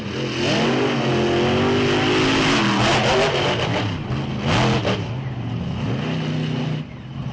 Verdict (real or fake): real